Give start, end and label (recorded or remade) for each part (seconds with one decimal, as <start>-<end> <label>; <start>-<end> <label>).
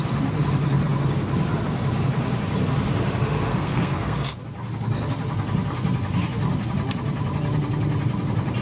0.0-3.5 recorded; 3.5-4.4 remade; 4.4-8.6 recorded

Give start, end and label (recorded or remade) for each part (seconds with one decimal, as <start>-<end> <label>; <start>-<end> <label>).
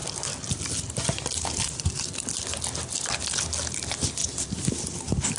0.0-5.4 recorded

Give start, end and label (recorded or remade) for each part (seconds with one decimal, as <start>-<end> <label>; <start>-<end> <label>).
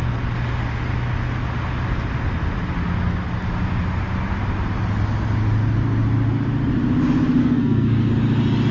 0.0-7.4 recorded; 7.4-8.1 remade; 8.1-8.7 recorded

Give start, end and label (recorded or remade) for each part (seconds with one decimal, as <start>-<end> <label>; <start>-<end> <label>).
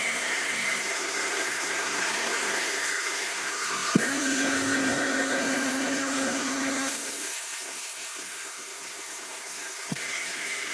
0.0-10.7 remade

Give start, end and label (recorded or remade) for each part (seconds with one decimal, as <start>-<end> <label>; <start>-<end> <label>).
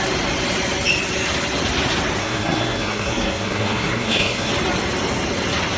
0.0-2.2 recorded; 2.2-4.5 remade; 4.5-5.8 recorded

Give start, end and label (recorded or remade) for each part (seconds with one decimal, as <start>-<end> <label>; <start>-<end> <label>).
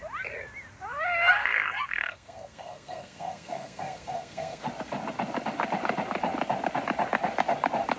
0.0-1.4 recorded; 1.4-4.6 remade; 4.6-8.0 recorded